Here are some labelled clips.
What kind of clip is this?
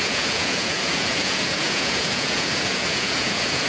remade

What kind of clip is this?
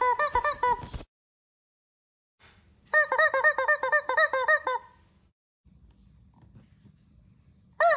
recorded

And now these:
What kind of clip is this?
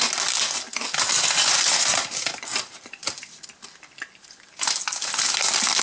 recorded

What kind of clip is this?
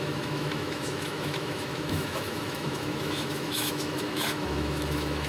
remade